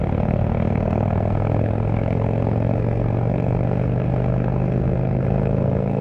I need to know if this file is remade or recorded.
remade